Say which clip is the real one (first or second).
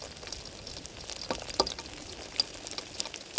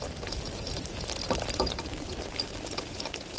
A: first